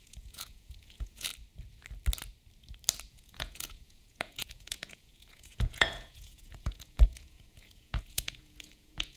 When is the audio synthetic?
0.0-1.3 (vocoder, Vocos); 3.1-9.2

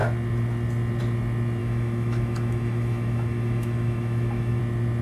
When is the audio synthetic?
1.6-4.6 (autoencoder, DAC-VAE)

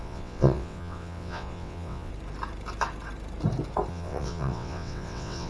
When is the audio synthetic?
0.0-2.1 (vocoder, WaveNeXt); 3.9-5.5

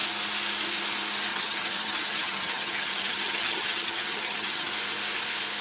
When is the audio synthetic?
1.3-4.7 (vocoder, HiFi-GAN)

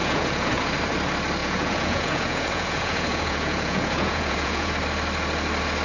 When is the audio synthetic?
0.0-0.7 (vocoder, Vocos); 1.4-4.7

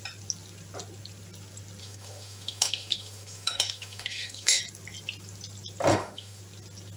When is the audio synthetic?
1.8-4.6 (autoencoder, DAC-VAE); 5.9-6.4